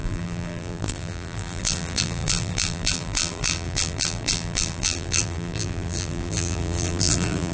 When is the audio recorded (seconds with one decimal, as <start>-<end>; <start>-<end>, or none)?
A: none

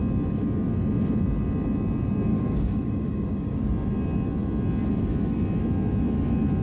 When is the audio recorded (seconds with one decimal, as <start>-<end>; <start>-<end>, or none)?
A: 0.0-2.3; 3.7-6.6

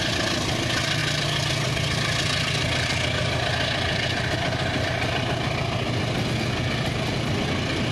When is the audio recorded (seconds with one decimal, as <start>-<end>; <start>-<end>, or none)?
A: 0.0-7.9

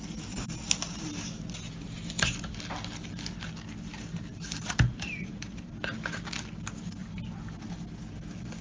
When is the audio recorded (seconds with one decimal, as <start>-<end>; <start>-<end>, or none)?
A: 0.0-4.3; 5.7-8.6

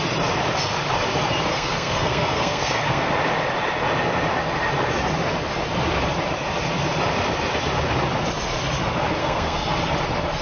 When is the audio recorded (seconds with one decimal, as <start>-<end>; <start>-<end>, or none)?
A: 0.0-1.5; 3.1-9.2; 9.7-10.4